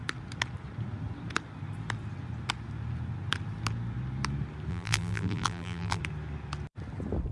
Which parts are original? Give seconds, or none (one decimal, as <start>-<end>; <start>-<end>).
0.0-4.7; 6.0-7.3